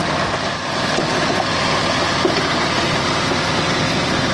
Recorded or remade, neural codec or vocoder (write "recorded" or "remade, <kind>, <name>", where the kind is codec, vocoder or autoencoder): recorded